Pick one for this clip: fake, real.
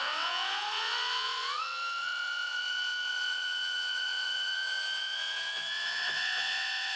fake